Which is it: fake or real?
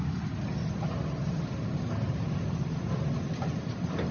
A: real